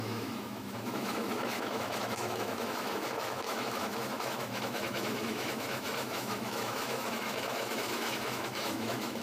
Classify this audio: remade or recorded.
remade